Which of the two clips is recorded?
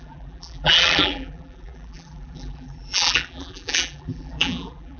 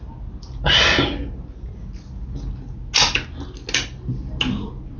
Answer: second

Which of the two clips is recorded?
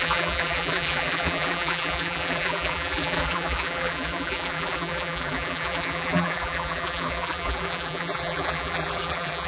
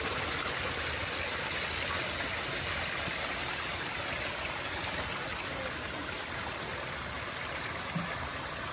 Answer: second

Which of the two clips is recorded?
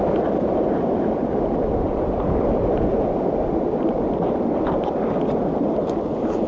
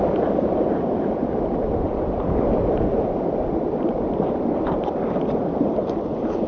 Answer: first